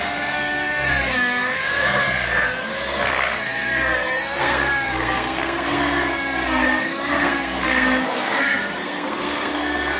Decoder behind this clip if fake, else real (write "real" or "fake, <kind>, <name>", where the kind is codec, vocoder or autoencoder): fake, codec, SNAC